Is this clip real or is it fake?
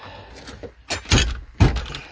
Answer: real